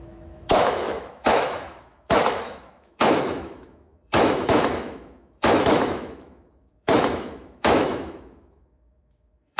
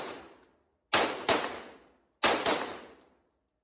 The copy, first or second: first